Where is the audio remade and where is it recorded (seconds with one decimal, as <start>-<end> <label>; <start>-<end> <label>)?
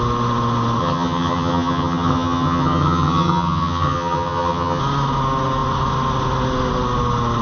0.0-0.8 recorded; 0.8-4.8 remade; 4.8-7.4 recorded